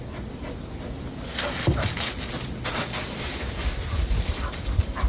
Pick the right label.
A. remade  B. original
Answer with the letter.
B